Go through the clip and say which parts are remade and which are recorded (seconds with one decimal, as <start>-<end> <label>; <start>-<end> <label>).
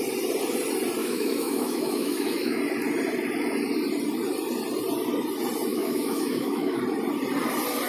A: 0.0-1.0 recorded; 1.0-2.6 remade; 2.6-5.7 recorded; 5.7-6.8 remade; 6.8-7.9 recorded